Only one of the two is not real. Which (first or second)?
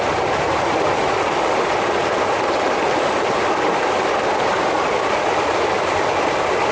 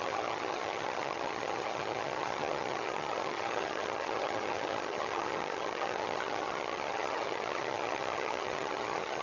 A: second